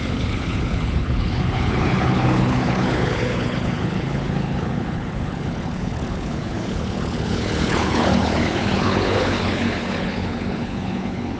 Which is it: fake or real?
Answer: fake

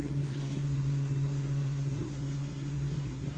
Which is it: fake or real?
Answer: fake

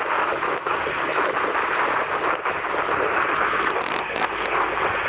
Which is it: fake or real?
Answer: real